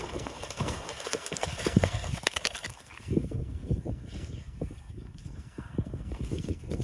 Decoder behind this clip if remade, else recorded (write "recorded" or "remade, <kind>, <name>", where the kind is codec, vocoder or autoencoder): remade, codec, SNAC